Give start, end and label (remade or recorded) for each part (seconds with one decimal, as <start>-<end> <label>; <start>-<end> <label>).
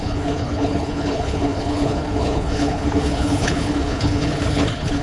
0.0-5.0 remade